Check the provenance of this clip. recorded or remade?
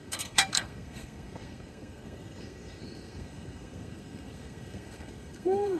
remade